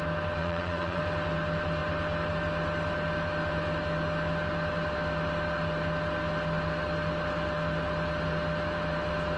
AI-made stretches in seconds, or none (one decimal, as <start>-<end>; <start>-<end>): 0.4-1.0